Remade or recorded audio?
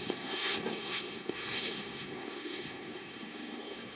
remade